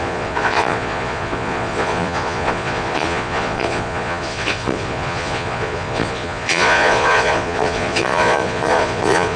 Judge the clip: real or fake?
fake